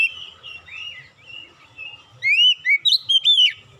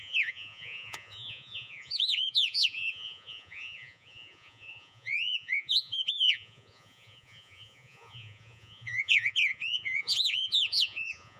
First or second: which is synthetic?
second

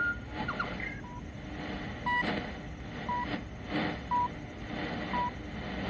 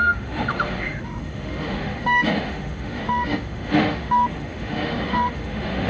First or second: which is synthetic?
second